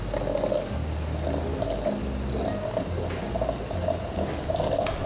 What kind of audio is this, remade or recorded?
recorded